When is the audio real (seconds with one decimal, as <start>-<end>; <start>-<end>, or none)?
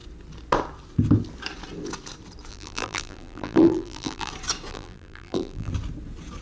0.0-2.5; 4.3-4.7; 5.7-6.4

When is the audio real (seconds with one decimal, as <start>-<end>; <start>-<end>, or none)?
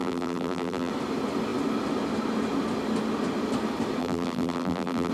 0.9-4.0